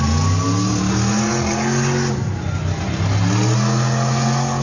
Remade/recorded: recorded